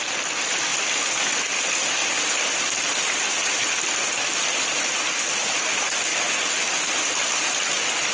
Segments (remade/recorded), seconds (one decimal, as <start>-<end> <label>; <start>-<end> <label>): 0.0-8.1 recorded